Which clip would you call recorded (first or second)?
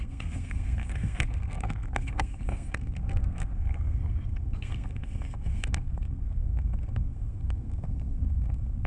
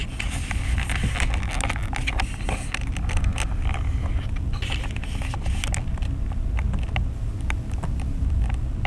second